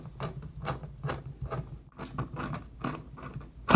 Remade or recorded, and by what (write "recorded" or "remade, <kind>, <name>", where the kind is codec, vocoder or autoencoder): recorded